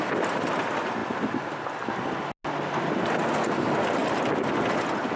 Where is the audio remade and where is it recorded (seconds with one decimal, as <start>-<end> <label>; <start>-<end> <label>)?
0.0-5.2 recorded